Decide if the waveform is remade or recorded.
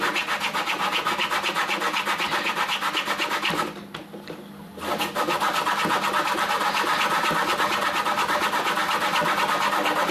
recorded